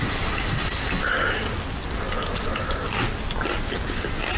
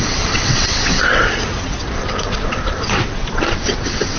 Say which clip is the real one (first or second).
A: first